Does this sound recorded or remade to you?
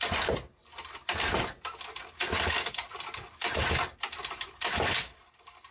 recorded